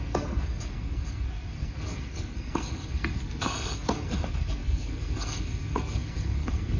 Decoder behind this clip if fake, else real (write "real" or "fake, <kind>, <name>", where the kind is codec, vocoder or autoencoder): fake, codec, SNAC